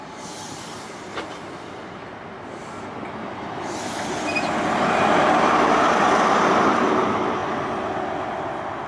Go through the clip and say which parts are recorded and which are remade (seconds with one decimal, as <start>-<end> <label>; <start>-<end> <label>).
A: 0.0-2.0 remade; 2.0-6.1 recorded; 6.1-7.4 remade; 7.4-8.9 recorded